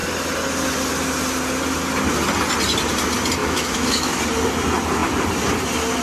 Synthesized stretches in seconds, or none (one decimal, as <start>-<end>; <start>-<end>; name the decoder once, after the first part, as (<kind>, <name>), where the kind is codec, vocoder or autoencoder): 3.4-4.2 (autoencoder, DAC-VAE)

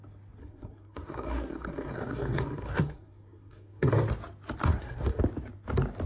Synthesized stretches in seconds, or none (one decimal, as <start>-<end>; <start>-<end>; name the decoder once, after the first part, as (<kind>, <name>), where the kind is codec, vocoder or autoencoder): 0.4-3.9 (codec, SNAC); 4.6-5.2

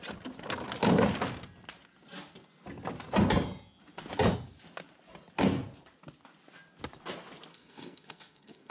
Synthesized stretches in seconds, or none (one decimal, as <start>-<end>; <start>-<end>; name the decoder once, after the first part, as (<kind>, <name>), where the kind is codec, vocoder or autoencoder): 7.5-8.7 (codec, SNAC)

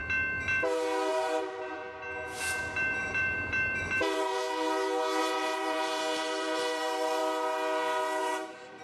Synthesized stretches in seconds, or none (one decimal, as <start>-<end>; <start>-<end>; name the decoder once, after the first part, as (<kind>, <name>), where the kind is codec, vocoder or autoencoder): 1.1-1.8 (vocoder, BigVGAN v2); 2.6-4.4; 5.2-7.2; 8.2-8.8

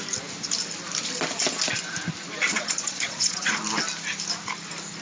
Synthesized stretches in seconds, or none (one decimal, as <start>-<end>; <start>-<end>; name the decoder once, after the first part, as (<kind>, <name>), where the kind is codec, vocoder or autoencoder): 2.5-3.6 (vocoder, Vocos)

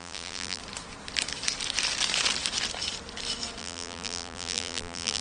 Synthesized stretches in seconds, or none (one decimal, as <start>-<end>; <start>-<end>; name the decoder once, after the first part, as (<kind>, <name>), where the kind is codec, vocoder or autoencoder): 0.0-0.6 (vocoder, BigVGAN v2); 3.6-5.2

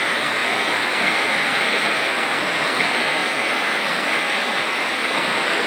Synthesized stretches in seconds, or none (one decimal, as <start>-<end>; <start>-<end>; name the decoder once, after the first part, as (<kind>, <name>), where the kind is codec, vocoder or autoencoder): 0.0-5.7 (codec, SNAC)

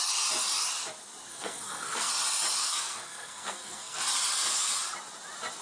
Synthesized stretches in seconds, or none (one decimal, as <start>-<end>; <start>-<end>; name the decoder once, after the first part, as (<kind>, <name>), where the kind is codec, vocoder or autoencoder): 1.3-2.1 (codec, SNAC); 2.6-4.0